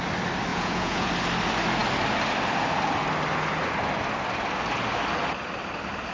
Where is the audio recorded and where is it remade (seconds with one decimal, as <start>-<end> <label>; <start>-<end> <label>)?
0.0-0.5 recorded; 0.5-1.1 remade; 1.1-6.1 recorded